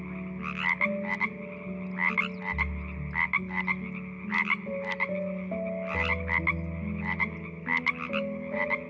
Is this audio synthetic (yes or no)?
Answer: no